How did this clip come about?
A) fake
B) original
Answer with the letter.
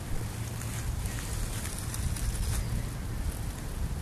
B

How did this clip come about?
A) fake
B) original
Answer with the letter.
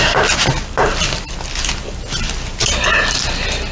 B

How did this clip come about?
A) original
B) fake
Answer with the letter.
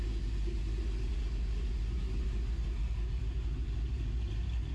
A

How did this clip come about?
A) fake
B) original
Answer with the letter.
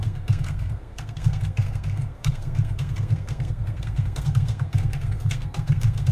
A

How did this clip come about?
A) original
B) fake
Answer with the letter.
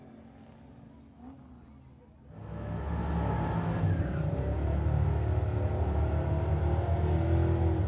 A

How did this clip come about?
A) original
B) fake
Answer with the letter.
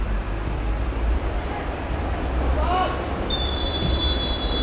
B